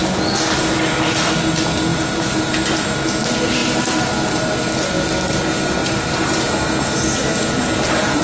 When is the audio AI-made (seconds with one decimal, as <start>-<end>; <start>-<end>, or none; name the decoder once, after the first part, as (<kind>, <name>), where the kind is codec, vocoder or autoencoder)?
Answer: 1.9-2.5 (vocoder, BigVGAN v2); 3.6-4.5; 5.8-6.7